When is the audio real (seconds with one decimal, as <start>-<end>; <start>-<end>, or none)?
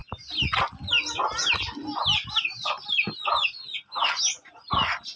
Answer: 0.0-5.2